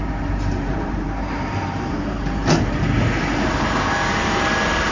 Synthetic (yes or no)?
yes